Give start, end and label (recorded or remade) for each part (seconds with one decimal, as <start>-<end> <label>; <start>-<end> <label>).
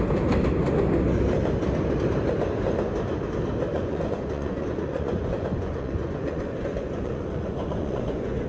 0.0-3.7 recorded; 3.7-8.5 remade